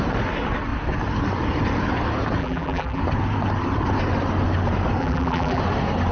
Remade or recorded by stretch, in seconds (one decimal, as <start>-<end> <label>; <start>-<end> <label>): 0.0-2.4 recorded; 2.4-3.0 remade; 3.0-5.0 recorded; 5.0-5.6 remade; 5.6-6.1 recorded